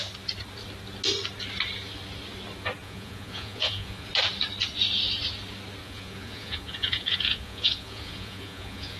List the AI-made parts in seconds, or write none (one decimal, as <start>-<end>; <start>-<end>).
2.8-4.1; 5.8-9.0